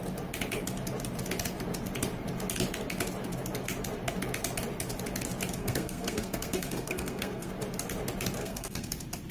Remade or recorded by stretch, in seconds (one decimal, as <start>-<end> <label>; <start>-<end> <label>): 0.0-5.6 recorded; 5.6-7.5 remade; 7.5-8.4 recorded; 8.4-8.9 remade; 8.9-9.3 recorded